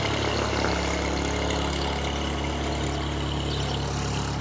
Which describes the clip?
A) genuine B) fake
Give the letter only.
A